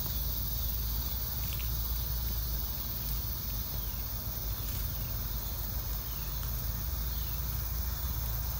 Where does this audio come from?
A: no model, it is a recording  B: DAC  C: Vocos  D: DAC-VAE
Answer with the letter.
A